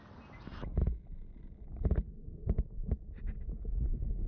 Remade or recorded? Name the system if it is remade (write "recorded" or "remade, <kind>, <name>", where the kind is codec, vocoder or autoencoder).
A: recorded